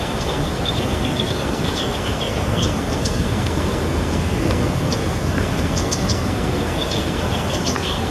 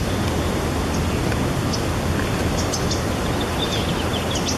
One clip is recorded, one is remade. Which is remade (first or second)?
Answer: first